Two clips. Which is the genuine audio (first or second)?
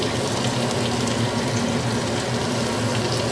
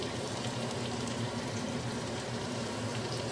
first